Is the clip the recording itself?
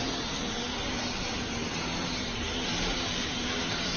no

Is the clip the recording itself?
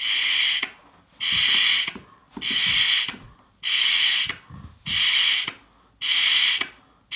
yes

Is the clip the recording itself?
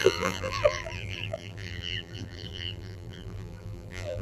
no